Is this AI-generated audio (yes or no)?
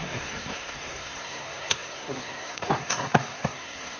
yes